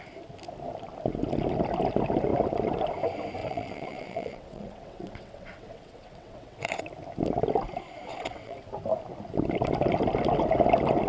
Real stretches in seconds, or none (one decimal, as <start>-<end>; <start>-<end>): 0.0-3.4; 6.8-8.1; 8.7-11.1